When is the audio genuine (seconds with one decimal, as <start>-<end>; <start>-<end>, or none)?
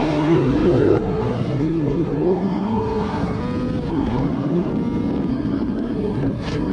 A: 3.4-3.9; 4.7-5.3